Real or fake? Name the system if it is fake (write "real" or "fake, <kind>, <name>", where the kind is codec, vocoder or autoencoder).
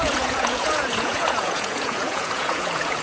fake, vocoder, Vocos